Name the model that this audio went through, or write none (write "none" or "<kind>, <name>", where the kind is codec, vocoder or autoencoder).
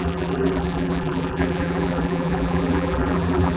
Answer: vocoder, BigVGAN v2